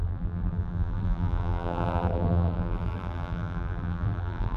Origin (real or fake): fake